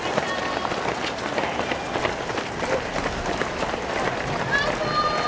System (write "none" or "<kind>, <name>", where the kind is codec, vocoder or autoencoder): none